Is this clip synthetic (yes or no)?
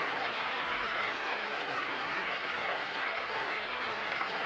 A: yes